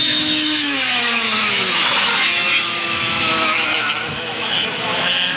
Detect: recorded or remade remade